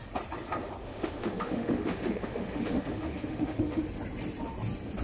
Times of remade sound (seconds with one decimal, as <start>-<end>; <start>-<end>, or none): 0.8-3.8